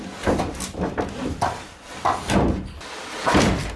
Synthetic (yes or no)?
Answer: no